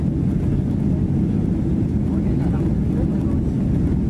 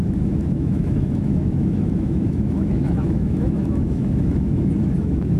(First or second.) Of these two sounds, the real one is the first